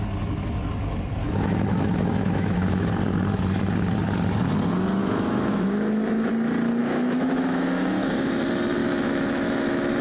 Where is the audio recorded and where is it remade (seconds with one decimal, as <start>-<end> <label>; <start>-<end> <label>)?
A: 0.0-1.2 recorded; 1.2-2.9 remade; 2.9-5.0 recorded; 5.0-6.3 remade; 6.3-6.8 recorded; 6.8-8.3 remade; 8.3-8.8 recorded; 8.8-10.0 remade